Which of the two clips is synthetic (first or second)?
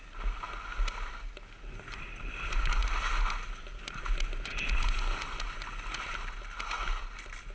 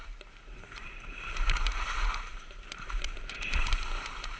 second